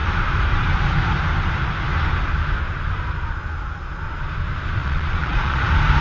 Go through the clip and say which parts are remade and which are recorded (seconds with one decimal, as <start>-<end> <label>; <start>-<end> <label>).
0.0-4.8 recorded; 4.8-5.6 remade; 5.6-6.0 recorded